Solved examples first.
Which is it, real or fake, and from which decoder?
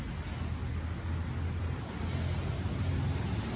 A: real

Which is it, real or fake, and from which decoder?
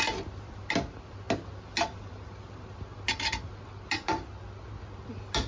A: real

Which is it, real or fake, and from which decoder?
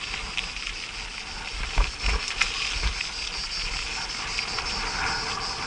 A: real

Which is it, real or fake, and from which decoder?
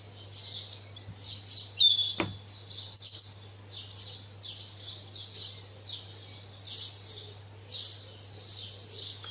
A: real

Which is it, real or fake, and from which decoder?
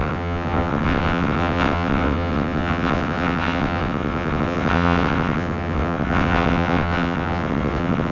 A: fake, vocoder, WaveNeXt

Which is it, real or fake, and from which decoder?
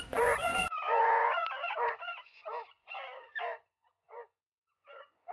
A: fake, vocoder, Vocos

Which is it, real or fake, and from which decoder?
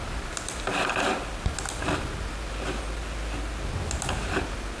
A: real